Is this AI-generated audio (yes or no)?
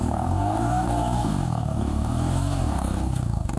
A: yes